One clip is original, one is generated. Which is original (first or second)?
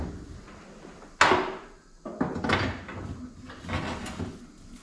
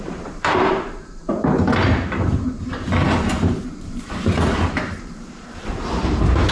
first